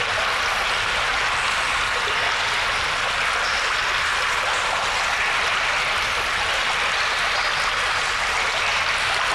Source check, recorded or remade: recorded